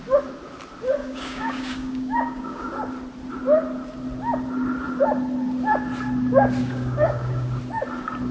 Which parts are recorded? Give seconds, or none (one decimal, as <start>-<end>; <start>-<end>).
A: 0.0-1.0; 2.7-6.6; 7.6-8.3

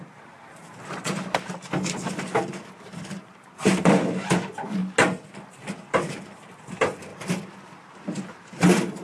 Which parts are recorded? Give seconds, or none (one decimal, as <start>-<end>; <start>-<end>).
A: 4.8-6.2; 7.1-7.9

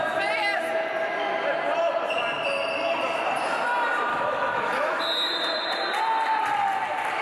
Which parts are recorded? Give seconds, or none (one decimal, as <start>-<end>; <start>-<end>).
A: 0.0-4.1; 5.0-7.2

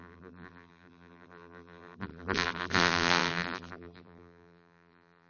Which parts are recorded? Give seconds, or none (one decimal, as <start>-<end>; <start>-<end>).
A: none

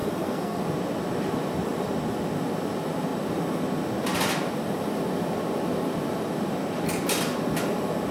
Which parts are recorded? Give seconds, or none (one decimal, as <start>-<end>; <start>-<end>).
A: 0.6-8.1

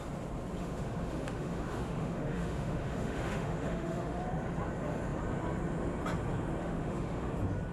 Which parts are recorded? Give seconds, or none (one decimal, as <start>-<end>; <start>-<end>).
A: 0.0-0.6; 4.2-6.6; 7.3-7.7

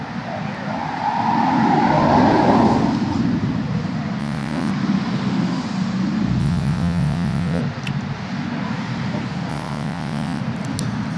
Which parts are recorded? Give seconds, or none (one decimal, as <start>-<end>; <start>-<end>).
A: 0.0-4.2; 4.7-6.4; 7.6-9.5; 10.4-11.2

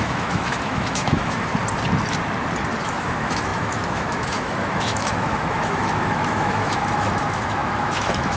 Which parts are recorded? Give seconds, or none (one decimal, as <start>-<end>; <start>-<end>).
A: 1.5-2.8